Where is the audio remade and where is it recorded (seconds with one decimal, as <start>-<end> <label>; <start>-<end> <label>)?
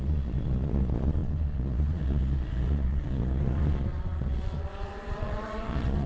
0.0-6.1 remade